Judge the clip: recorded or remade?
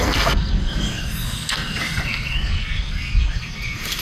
remade